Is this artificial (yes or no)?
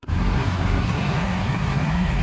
yes